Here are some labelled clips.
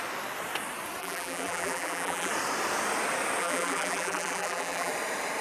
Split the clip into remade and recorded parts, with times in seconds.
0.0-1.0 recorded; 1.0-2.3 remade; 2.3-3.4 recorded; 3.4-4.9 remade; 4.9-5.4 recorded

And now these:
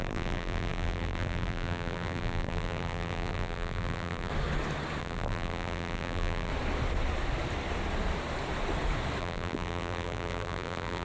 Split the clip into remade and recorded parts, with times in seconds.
0.0-4.3 remade; 4.3-5.0 recorded; 5.0-6.5 remade; 6.5-9.2 recorded; 9.2-11.0 remade